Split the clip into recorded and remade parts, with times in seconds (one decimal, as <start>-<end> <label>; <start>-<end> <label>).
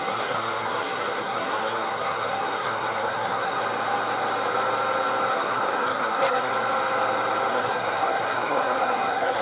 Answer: 0.0-3.6 remade; 3.6-5.3 recorded; 5.3-6.5 remade; 6.5-7.5 recorded; 7.5-9.4 remade